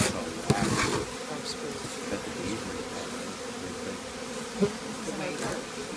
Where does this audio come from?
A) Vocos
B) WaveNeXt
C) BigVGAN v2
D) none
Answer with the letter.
D